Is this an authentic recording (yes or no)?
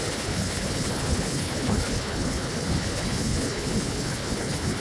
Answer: no